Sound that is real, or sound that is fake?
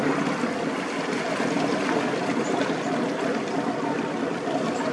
real